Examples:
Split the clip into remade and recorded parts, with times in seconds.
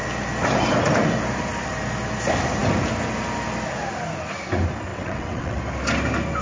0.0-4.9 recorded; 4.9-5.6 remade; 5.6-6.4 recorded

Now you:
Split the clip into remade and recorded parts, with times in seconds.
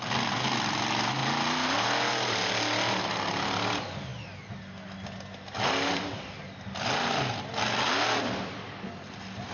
0.0-9.5 recorded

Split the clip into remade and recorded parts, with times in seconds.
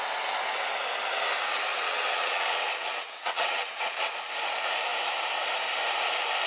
0.0-1.7 recorded; 1.7-4.1 remade; 4.1-6.5 recorded